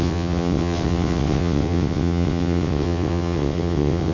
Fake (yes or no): yes